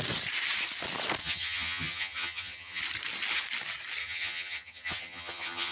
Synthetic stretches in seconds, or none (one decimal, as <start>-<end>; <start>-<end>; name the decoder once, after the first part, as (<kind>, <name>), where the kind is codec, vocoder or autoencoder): 1.2-2.8 (vocoder, HiFi-GAN); 4.0-5.7